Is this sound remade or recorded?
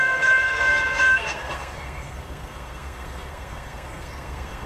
remade